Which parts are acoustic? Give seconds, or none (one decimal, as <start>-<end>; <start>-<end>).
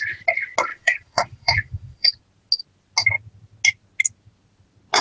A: 0.0-0.7; 2.2-5.0